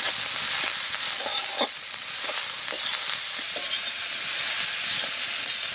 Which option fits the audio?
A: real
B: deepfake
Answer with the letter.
A